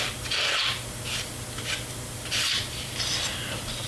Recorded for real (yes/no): yes